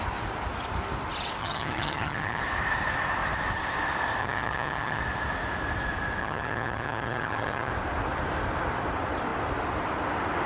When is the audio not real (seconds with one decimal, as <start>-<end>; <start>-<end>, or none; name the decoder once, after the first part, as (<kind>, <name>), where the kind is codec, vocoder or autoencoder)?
1.4-2.4 (vocoder, HiFi-GAN); 4.2-5.0; 6.2-7.7